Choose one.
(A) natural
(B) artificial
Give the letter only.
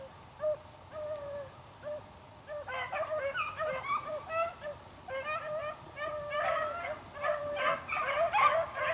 A